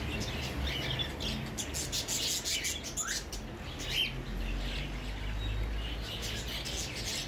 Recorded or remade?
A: recorded